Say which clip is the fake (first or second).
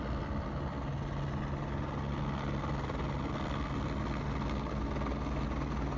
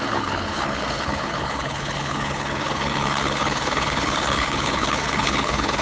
second